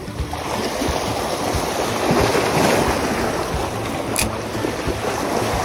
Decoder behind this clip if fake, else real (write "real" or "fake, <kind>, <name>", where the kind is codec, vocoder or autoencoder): real